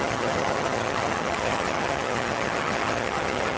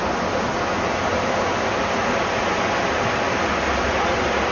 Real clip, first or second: second